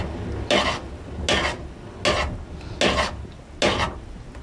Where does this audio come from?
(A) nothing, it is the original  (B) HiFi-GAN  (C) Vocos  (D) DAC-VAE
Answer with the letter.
A